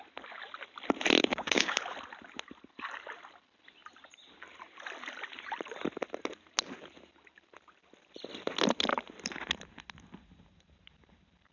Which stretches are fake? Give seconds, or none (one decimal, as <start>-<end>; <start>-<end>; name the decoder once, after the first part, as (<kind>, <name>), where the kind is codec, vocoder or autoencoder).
1.2-1.8 (codec, DAC)